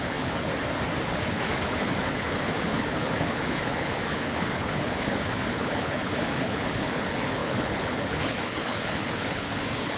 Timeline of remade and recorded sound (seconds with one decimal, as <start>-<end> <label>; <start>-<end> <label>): 0.0-0.5 remade; 0.5-1.0 recorded; 1.0-10.0 remade